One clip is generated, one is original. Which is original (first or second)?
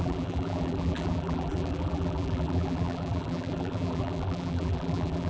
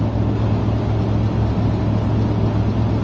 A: second